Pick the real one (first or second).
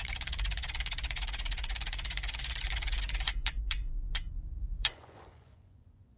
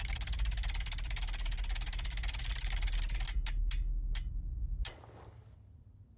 second